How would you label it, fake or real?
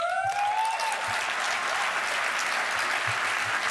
real